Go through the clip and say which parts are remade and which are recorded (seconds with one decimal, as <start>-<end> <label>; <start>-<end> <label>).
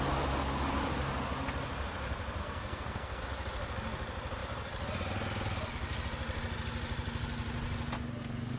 0.0-2.4 recorded; 2.4-3.2 remade; 3.2-8.6 recorded